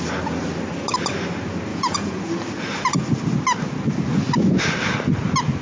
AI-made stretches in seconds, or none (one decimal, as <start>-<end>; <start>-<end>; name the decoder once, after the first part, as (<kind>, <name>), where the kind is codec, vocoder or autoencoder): 1.7-2.2 (vocoder, Vocos)